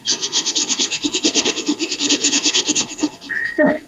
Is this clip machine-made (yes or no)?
yes